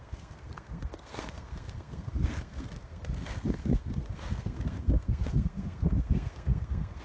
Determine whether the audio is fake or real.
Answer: fake